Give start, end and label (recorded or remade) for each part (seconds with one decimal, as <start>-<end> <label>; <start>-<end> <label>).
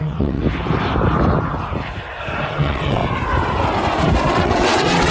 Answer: 0.0-0.4 remade; 0.4-2.5 recorded; 2.5-3.0 remade; 3.0-4.3 recorded; 4.3-5.1 remade